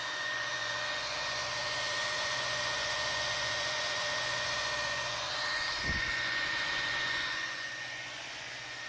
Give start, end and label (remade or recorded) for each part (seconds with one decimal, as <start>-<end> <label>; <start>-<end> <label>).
0.0-8.9 remade